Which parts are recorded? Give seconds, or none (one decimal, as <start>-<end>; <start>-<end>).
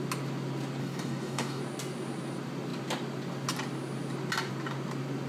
0.0-0.8; 1.6-5.3